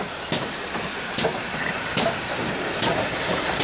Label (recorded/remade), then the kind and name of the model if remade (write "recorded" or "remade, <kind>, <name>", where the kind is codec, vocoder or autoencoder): recorded